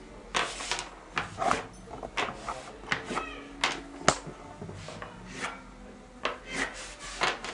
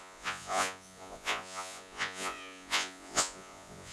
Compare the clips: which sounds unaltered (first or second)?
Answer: first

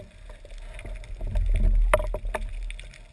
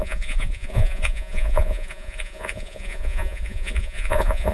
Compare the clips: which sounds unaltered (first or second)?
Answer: first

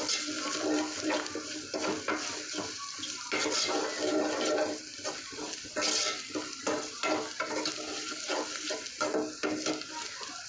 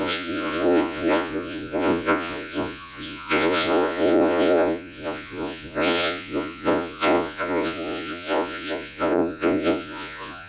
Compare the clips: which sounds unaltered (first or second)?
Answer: first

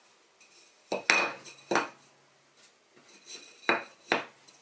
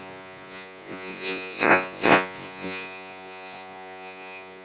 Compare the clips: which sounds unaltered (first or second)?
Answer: first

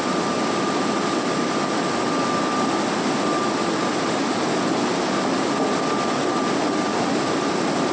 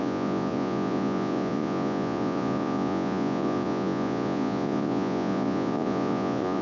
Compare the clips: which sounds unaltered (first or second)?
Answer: first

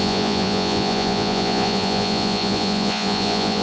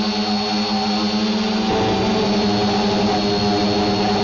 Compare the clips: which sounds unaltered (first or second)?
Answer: second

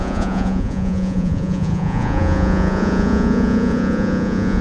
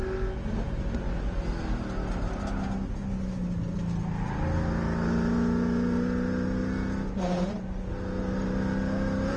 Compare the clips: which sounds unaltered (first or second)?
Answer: second